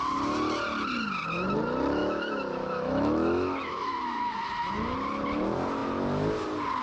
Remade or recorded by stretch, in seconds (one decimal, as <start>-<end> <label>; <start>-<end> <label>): 0.0-2.0 recorded; 2.0-4.7 remade; 4.7-6.8 recorded